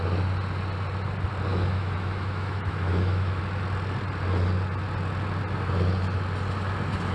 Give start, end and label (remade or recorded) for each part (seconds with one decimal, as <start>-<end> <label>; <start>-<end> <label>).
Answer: 0.0-1.5 recorded; 1.5-3.4 remade; 3.4-7.1 recorded